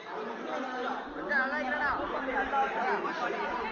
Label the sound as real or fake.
real